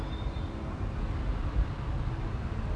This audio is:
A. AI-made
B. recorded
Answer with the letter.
A